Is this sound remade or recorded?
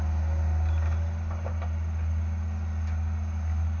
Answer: recorded